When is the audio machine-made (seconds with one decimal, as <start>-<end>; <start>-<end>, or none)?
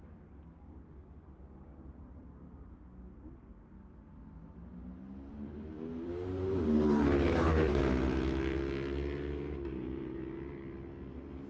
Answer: 5.3-7.8; 9.7-10.3